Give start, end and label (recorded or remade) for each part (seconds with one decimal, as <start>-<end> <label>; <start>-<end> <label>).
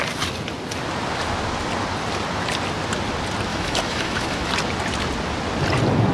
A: 0.0-3.5 recorded; 3.5-4.5 remade; 4.5-6.1 recorded